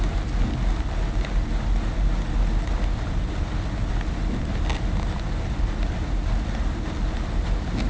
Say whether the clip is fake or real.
real